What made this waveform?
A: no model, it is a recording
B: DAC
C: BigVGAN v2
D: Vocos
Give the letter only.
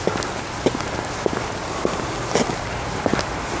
A